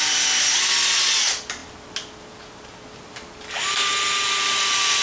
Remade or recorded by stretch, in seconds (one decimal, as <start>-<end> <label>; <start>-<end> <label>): 0.0-5.0 recorded

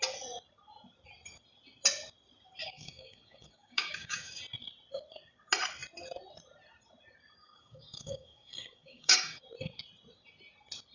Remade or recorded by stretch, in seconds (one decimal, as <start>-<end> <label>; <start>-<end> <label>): 0.0-2.6 recorded; 2.6-4.4 remade; 4.4-7.4 recorded; 7.4-9.4 remade; 9.4-10.9 recorded

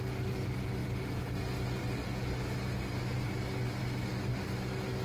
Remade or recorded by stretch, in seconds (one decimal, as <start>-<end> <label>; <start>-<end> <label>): 0.0-5.0 recorded